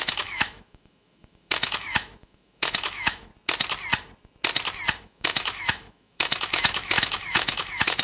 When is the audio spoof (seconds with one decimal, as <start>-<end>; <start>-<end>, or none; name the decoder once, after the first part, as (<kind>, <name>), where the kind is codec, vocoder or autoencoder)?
0.0-3.3 (autoencoder, DAC-VAE); 5.0-8.0